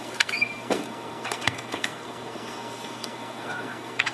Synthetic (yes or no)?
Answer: yes